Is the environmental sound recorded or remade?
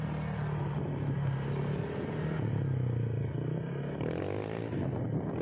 recorded